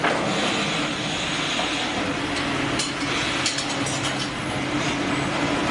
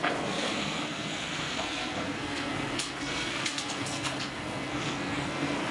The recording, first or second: first